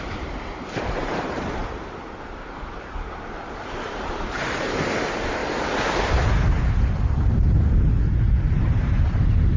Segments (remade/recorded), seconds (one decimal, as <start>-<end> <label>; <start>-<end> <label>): 0.0-5.4 remade; 5.4-7.3 recorded; 7.3-9.6 remade